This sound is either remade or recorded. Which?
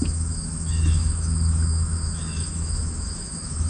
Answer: remade